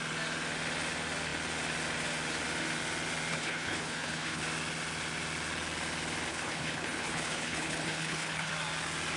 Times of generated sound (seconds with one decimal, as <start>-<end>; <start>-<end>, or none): 3.3-4.4; 6.3-8.5

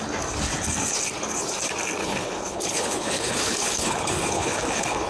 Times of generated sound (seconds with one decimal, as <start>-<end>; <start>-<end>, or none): 2.0-5.1